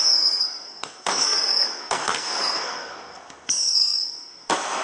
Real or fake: fake